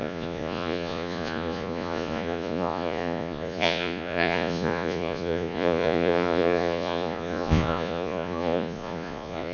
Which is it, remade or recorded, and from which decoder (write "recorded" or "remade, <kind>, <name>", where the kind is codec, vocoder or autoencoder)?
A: remade, vocoder, Vocos